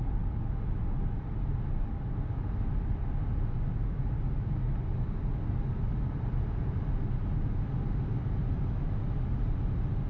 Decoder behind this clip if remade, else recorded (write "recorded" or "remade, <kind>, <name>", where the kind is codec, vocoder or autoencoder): recorded